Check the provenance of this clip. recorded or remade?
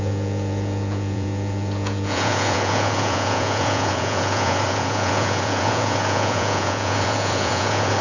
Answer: remade